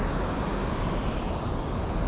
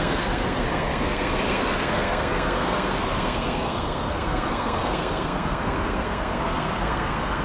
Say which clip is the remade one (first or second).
second